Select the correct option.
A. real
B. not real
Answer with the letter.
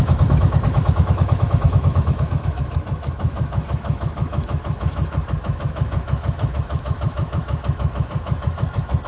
B